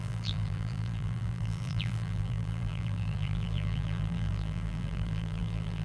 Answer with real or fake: fake